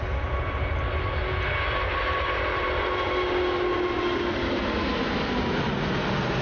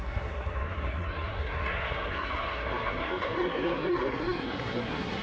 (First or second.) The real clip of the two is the first